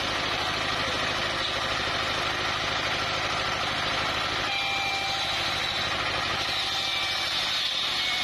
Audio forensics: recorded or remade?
recorded